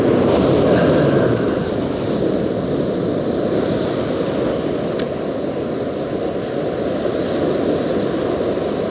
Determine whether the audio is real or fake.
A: real